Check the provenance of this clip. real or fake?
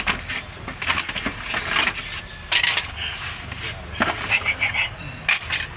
real